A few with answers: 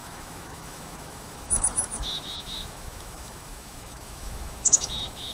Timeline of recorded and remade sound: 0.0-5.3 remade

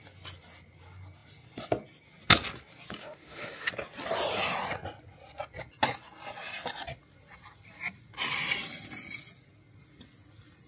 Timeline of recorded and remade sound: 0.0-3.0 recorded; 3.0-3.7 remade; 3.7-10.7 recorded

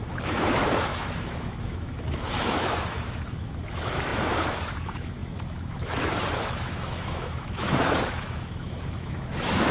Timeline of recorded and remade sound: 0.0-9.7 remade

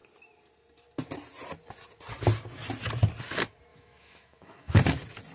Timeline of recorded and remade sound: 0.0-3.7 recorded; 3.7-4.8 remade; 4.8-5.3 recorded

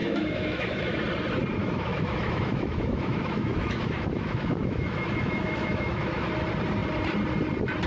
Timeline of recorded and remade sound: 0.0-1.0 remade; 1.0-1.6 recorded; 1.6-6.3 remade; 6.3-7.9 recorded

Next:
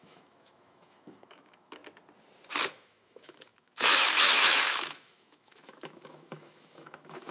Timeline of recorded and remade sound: 0.0-1.8 remade; 1.8-2.6 recorded; 2.6-7.3 remade

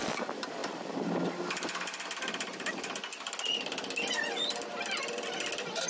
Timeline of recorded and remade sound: 0.0-5.9 recorded